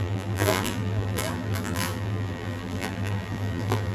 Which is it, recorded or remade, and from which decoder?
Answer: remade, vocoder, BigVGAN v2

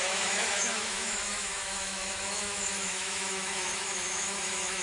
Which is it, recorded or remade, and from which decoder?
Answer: remade, autoencoder, DAC-VAE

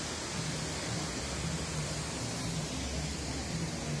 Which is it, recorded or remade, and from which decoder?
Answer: recorded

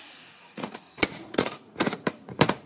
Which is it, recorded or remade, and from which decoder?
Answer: remade, vocoder, Vocos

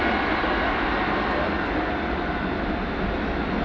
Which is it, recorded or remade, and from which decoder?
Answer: recorded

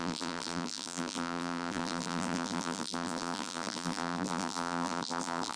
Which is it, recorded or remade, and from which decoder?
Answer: remade, vocoder, BigVGAN v2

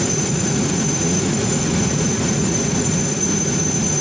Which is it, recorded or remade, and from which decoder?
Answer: remade, vocoder, Vocos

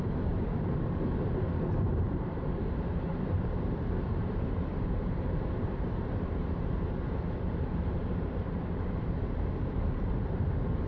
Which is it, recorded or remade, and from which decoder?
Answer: remade, vocoder, BigVGAN v2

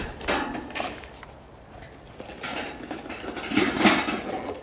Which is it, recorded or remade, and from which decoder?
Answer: recorded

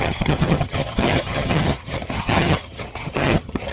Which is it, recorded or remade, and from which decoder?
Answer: remade, vocoder, HiFi-GAN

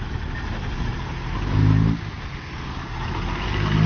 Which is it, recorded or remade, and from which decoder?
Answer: recorded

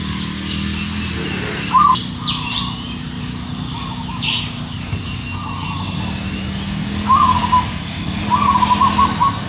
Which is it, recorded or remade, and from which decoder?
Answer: recorded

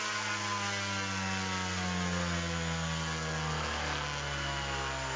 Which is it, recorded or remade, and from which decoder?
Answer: recorded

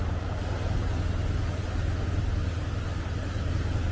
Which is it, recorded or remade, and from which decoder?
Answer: recorded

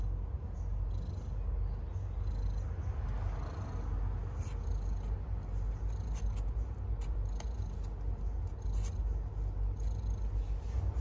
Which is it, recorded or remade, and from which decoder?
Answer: recorded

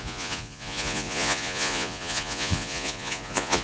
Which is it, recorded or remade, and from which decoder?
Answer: remade, vocoder, Vocos